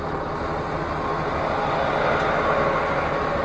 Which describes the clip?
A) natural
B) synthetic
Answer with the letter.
A